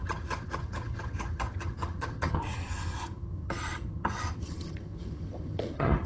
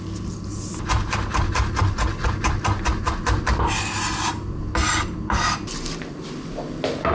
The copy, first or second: first